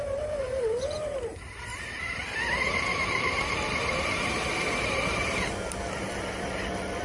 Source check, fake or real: fake